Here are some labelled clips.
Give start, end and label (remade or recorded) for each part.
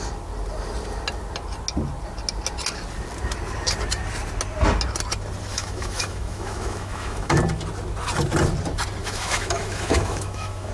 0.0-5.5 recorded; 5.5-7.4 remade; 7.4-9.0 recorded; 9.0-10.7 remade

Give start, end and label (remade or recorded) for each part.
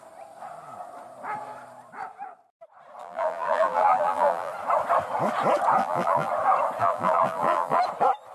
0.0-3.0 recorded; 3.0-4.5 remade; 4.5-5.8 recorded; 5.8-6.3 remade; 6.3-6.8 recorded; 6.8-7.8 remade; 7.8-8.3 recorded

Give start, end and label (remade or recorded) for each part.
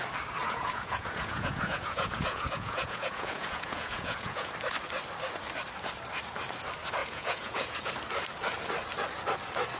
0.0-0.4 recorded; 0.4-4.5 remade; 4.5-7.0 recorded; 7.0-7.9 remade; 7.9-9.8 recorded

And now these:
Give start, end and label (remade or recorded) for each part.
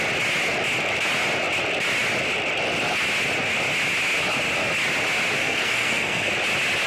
0.0-5.4 recorded; 5.4-6.3 remade; 6.3-6.9 recorded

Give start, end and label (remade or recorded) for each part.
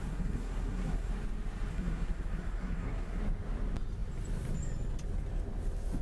0.0-1.1 remade; 1.1-1.7 recorded; 1.7-3.2 remade; 3.2-6.0 recorded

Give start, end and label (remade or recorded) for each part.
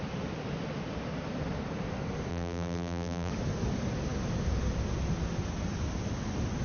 0.0-2.3 recorded; 2.3-3.3 remade; 3.3-6.6 recorded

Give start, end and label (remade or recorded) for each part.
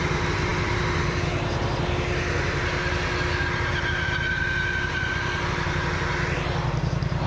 0.0-7.3 recorded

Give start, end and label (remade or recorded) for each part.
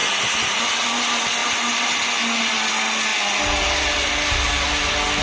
0.0-1.4 recorded; 1.4-2.0 remade; 2.0-5.2 recorded